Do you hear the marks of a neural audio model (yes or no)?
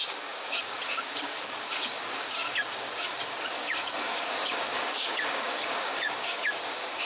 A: yes